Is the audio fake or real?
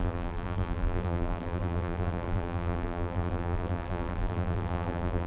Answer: fake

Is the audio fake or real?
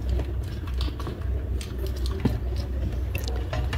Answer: real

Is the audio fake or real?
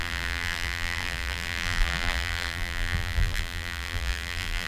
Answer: fake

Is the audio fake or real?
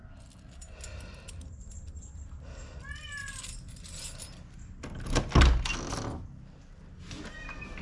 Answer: real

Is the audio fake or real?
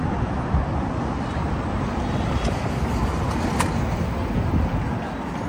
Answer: real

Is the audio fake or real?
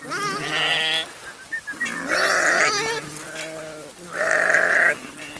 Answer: real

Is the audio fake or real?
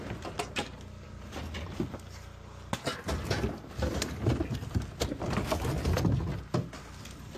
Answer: real